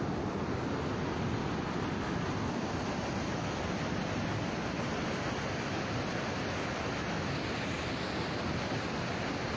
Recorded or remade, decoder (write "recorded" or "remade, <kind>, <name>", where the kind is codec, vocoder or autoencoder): recorded